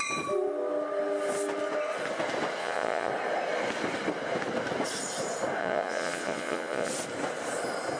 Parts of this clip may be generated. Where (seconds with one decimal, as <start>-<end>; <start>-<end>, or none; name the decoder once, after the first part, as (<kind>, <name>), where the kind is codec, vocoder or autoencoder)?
2.6-3.1 (vocoder, Vocos); 5.6-6.9